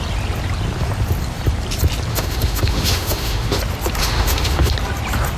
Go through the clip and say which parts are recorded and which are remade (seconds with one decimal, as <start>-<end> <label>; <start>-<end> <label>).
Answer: 0.0-2.1 recorded; 2.1-3.6 remade; 3.6-4.0 recorded; 4.0-4.7 remade; 4.7-5.4 recorded